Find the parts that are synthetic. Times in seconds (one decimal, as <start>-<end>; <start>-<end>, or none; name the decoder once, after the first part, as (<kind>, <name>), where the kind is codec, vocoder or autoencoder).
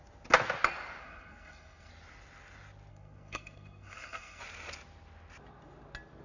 1.0-1.9 (codec, SNAC); 2.9-4.4